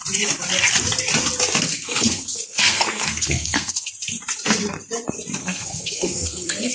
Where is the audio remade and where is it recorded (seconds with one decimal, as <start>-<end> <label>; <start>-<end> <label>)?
0.0-1.7 recorded; 1.7-3.9 remade; 3.9-5.4 recorded; 5.4-6.7 remade